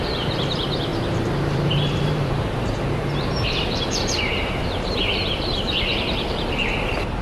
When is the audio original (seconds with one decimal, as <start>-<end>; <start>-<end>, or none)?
none